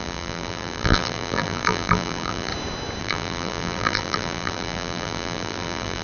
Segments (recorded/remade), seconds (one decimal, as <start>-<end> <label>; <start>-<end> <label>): 0.0-2.5 remade; 2.5-3.0 recorded; 3.0-6.0 remade